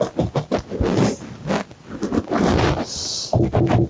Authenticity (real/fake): real